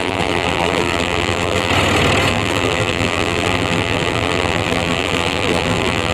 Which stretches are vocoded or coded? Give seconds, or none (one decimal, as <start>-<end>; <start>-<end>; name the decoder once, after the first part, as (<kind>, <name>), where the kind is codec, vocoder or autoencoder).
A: 0.0-1.7 (vocoder, BigVGAN v2); 2.3-6.1